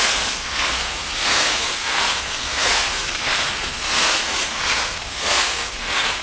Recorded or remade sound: remade